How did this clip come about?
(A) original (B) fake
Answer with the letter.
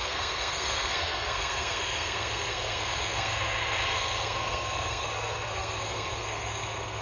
B